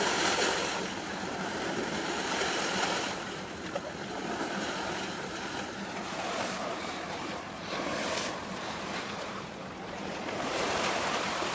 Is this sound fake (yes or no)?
yes